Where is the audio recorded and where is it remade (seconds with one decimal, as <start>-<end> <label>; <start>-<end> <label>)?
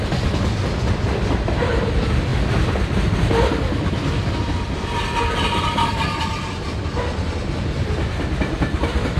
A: 0.0-9.2 recorded